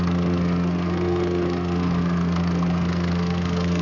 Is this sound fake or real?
fake